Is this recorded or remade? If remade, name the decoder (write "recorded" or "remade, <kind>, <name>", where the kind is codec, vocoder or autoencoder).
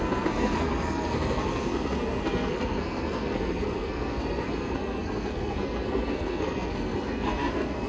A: remade, codec, SNAC